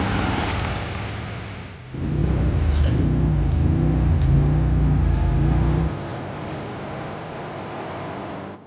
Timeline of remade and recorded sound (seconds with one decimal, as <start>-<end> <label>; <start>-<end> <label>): 0.0-2.2 recorded; 2.2-3.0 remade; 3.0-8.7 recorded